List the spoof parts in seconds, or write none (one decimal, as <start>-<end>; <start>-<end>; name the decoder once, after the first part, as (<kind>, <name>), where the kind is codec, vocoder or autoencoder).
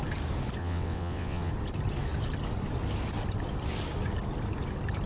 0.6-1.5 (vocoder, WaveNeXt)